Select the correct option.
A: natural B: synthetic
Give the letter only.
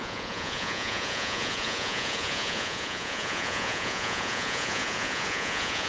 B